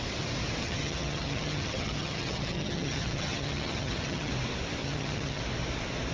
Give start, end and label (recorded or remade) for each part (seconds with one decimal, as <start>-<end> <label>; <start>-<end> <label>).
0.0-0.6 recorded; 0.6-4.3 remade; 4.3-4.8 recorded; 4.8-5.4 remade; 5.4-6.1 recorded